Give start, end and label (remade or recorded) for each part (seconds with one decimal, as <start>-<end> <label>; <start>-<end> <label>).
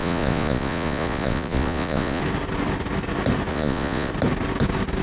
0.0-2.2 remade; 2.2-3.5 recorded; 3.5-4.1 remade; 4.1-5.0 recorded